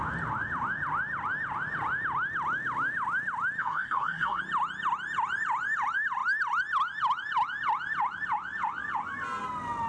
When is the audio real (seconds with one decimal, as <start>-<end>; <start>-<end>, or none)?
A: 0.0-3.6; 4.4-9.9